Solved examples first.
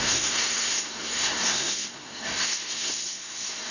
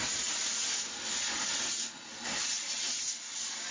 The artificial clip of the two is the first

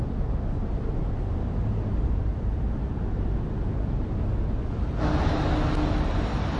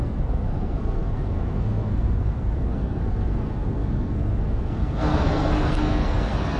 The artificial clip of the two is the second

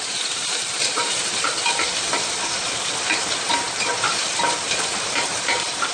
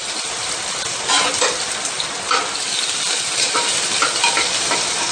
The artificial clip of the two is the first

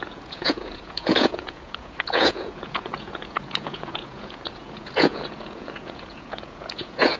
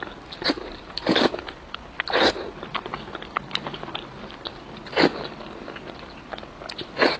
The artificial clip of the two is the first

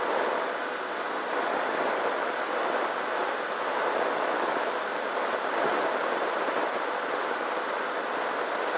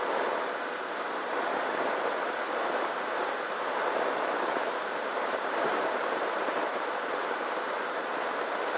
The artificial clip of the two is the second